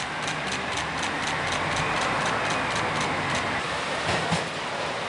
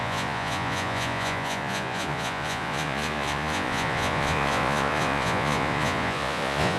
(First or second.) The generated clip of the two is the second